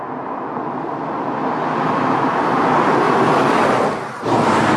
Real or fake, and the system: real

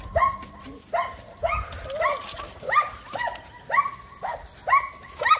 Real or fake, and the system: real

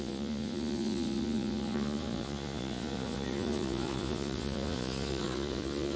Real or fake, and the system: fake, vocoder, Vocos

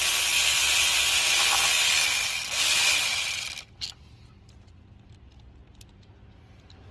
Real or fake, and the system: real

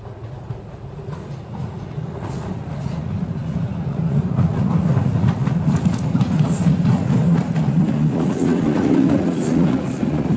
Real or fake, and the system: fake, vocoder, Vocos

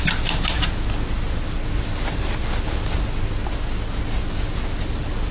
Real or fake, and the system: real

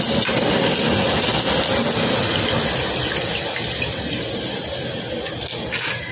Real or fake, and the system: real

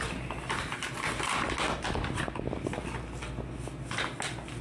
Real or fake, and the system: real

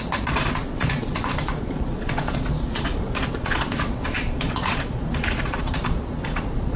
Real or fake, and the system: fake, vocoder, Vocos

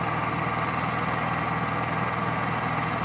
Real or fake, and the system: real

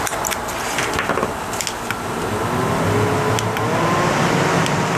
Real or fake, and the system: real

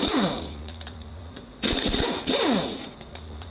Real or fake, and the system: fake, vocoder, Vocos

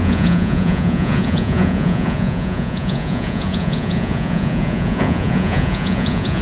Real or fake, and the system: fake, vocoder, Vocos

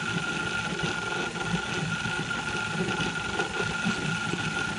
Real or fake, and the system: real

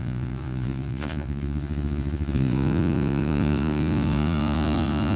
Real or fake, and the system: fake, vocoder, Vocos